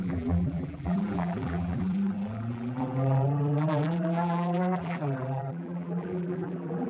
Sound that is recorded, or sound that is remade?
remade